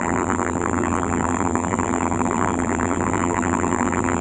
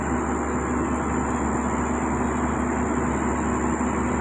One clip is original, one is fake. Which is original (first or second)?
second